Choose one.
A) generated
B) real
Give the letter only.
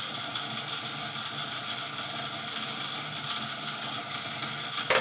B